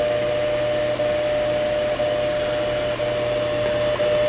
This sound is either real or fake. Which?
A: real